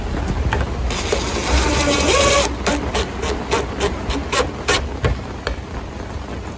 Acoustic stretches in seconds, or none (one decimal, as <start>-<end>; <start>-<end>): 0.0-6.6